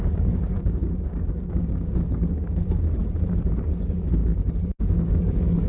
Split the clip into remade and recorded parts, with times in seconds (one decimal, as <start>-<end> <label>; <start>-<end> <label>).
0.0-3.0 remade; 3.0-3.8 recorded; 3.8-4.2 remade; 4.2-4.8 recorded; 4.8-5.7 remade